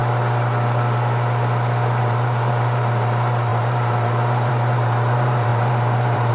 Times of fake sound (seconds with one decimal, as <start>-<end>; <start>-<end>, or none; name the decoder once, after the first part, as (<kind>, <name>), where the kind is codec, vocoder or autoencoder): 2.0-6.3 (vocoder, BigVGAN v2)